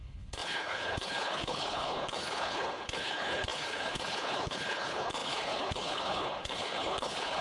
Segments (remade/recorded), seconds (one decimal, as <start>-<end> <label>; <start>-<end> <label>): 0.0-7.4 remade